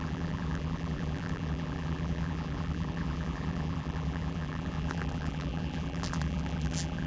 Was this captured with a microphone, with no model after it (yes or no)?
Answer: no